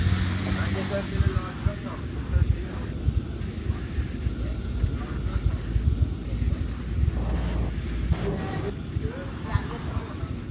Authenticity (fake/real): real